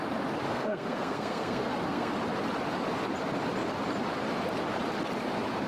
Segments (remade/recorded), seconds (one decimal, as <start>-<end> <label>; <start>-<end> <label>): 0.0-0.5 recorded; 0.5-2.1 remade; 2.1-5.7 recorded